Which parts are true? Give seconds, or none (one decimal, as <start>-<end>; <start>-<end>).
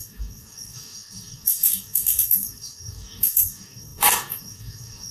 none